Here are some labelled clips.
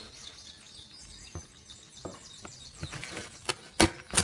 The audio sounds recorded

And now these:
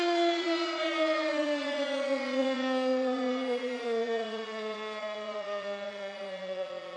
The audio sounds remade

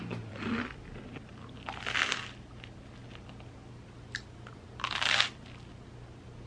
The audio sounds recorded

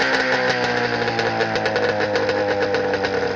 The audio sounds recorded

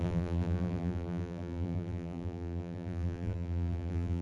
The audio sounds remade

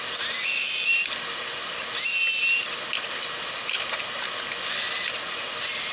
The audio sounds recorded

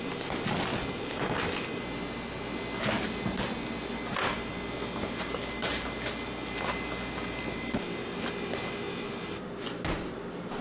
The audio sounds recorded